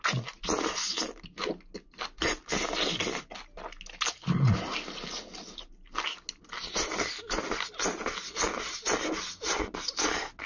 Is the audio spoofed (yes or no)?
no